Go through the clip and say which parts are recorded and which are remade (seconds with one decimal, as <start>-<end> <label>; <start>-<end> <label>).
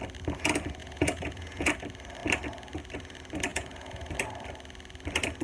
0.0-0.8 recorded; 0.8-1.7 remade; 1.7-3.5 recorded; 3.5-4.1 remade; 4.1-5.4 recorded